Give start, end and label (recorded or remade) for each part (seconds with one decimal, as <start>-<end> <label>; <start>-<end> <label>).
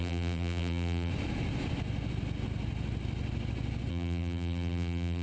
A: 0.0-1.1 remade; 1.1-3.9 recorded; 3.9-5.2 remade